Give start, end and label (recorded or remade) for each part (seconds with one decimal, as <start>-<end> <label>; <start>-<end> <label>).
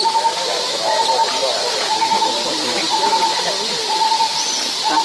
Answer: 0.0-5.0 recorded